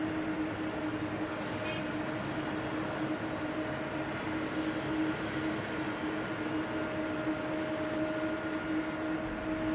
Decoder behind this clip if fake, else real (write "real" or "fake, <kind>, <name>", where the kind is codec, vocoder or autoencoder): real